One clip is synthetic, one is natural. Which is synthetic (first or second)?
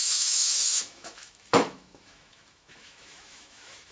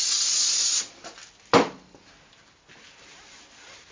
first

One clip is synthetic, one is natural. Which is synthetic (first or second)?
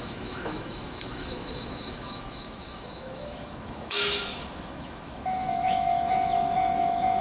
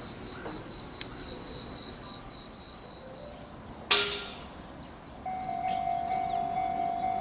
first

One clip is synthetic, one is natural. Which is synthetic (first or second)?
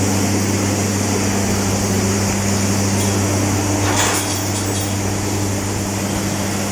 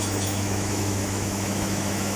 second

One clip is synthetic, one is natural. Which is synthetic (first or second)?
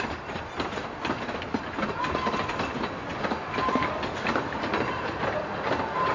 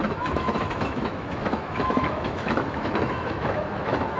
second